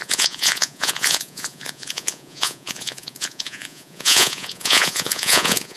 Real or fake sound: fake